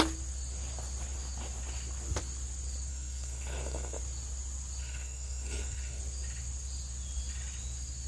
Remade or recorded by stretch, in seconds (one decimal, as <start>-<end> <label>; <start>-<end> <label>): 0.0-2.9 recorded; 2.9-4.0 remade; 4.0-4.8 recorded; 4.8-6.0 remade; 6.0-8.1 recorded